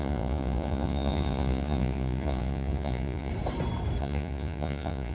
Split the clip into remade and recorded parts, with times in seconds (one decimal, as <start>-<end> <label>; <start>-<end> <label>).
0.0-3.3 remade; 3.3-4.0 recorded; 4.0-5.1 remade